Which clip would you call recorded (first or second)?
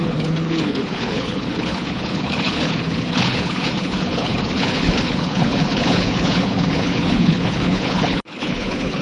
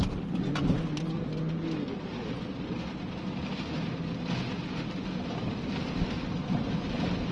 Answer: second